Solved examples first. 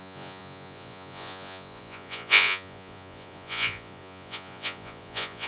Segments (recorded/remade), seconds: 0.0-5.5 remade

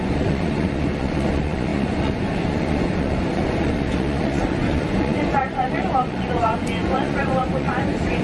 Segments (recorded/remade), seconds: 0.0-8.2 remade

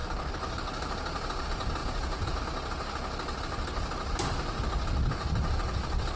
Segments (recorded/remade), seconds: 0.0-1.8 recorded; 1.8-2.4 remade; 2.4-6.2 recorded

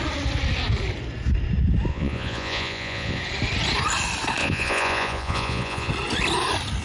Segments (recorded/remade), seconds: 0.0-1.9 recorded; 1.9-3.2 remade; 3.2-4.4 recorded; 4.4-5.9 remade; 5.9-6.8 recorded